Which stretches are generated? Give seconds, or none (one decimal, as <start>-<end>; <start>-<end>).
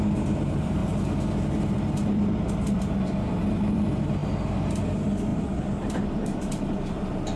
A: 0.0-0.8; 1.6-7.4